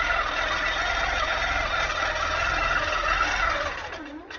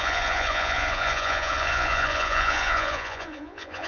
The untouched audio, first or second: first